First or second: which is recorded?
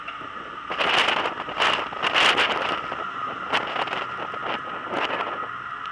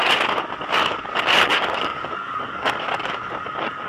first